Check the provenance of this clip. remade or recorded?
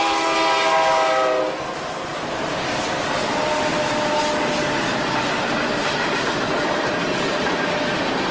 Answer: recorded